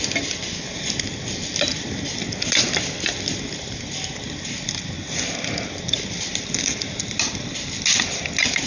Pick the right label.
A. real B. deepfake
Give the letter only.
A